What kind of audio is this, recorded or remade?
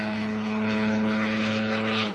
remade